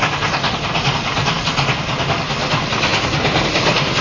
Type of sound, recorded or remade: recorded